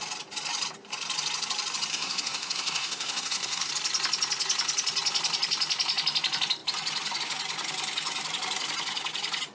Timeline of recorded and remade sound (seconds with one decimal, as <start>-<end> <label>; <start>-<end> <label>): 0.0-1.9 recorded; 1.9-3.7 remade; 3.7-9.5 recorded